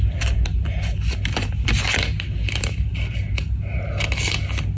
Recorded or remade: recorded